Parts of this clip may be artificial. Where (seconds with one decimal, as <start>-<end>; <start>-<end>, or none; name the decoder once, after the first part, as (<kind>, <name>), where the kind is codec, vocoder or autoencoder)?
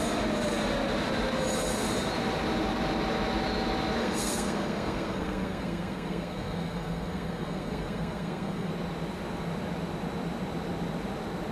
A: 4.0-8.7 (codec, SNAC)